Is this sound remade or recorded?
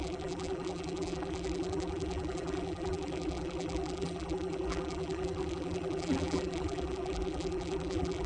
remade